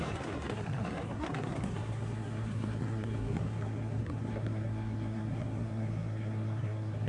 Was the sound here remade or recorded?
remade